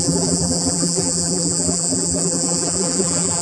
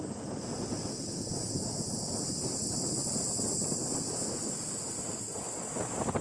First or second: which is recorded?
second